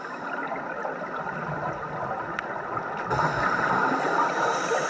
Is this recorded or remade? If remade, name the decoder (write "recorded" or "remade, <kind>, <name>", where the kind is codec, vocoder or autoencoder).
recorded